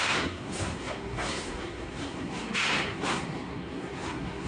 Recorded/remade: remade